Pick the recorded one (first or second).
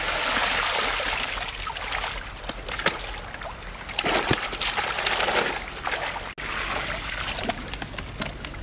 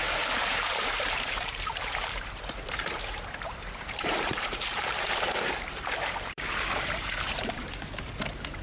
first